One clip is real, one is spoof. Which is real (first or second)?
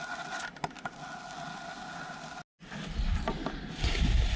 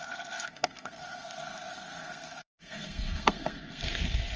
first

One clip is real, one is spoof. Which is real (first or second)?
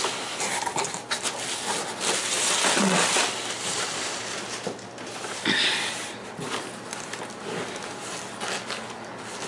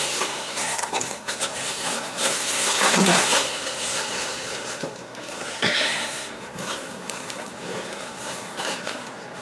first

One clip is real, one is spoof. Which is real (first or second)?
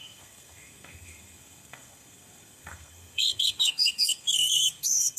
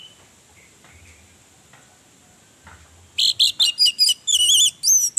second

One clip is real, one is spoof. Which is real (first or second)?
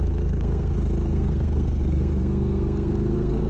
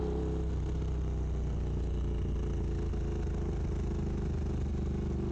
second